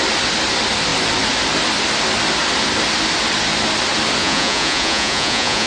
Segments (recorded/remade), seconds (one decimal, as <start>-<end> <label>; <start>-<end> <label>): 0.0-4.2 recorded; 4.2-5.7 remade